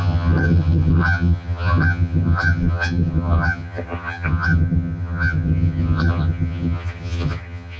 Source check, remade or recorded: remade